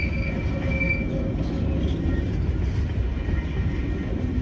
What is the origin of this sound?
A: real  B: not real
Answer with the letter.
A